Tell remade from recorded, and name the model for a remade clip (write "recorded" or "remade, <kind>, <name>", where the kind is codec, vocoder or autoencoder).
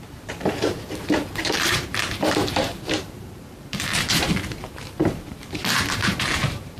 remade, vocoder, BigVGAN v2